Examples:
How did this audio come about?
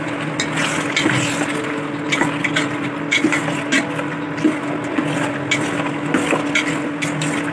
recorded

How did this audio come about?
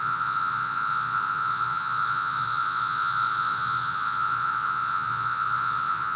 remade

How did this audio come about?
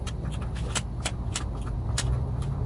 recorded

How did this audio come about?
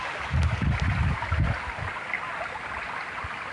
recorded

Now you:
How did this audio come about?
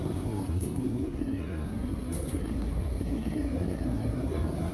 remade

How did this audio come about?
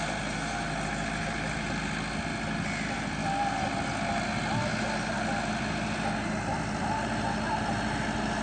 recorded